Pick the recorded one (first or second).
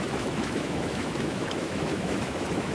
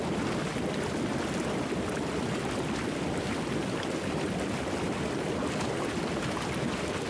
second